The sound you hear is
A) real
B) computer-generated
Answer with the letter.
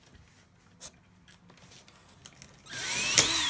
A